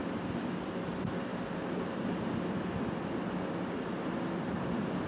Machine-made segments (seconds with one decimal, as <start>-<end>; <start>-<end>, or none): none